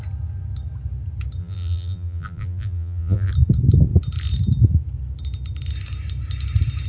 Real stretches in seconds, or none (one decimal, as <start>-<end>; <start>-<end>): 0.0-1.4; 3.3-6.9